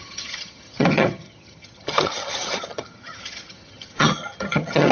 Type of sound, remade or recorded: remade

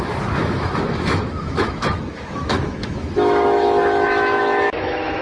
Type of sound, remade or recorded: remade